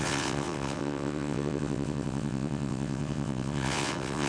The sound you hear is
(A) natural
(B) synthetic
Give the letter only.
B